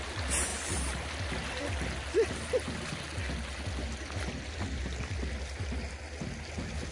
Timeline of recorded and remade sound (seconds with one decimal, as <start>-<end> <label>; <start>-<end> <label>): 0.0-6.9 recorded